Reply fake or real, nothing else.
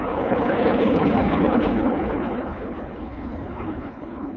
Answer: fake